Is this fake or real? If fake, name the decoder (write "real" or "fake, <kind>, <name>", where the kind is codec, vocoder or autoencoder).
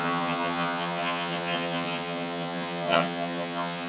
fake, vocoder, HiFi-GAN